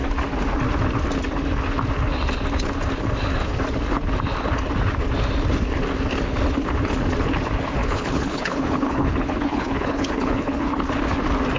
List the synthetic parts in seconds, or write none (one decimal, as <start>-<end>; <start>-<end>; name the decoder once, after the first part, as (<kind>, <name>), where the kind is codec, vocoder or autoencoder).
7.8-10.7 (codec, HILCodec)